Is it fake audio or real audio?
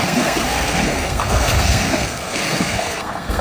fake